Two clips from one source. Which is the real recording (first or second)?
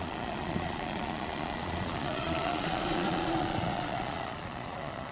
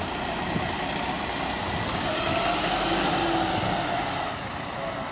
second